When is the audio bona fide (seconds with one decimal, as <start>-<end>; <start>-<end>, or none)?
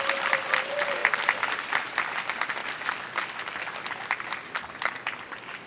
0.0-5.7